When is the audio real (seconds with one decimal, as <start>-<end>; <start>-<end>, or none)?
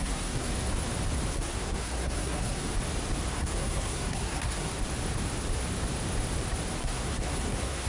0.5-1.3; 2.7-3.3; 4.7-6.8